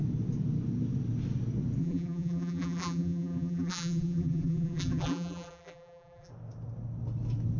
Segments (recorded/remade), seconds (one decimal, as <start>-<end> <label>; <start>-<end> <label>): 0.0-1.8 recorded; 1.8-6.3 remade; 6.3-7.6 recorded